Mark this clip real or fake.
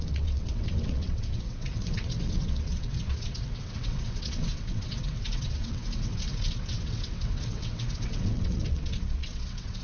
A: fake